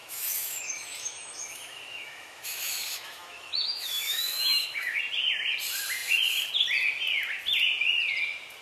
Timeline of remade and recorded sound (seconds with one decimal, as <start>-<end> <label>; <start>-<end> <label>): 0.0-5.0 remade; 5.0-8.6 recorded

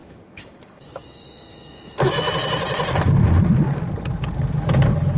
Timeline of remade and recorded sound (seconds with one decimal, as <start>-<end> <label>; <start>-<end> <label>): 0.0-2.3 remade; 2.3-5.2 recorded